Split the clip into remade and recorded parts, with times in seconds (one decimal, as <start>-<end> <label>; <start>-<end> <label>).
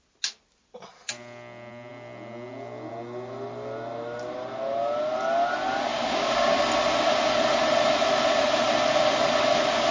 0.0-5.9 recorded; 5.9-6.6 remade; 6.6-9.9 recorded